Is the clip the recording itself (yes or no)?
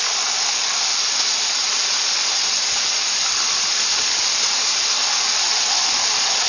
yes